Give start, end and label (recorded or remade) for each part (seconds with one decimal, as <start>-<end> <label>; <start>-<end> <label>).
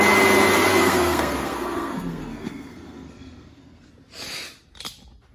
0.0-0.7 recorded; 0.7-3.9 remade; 3.9-5.3 recorded